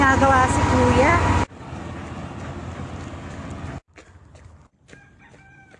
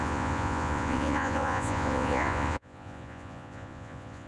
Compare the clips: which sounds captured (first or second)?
first